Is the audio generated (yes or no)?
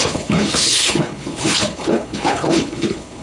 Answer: yes